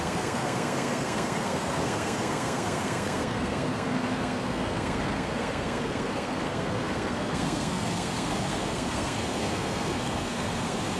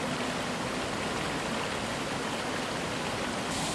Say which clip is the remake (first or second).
first